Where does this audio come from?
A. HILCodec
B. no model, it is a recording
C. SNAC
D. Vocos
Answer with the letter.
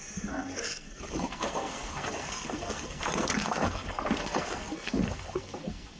C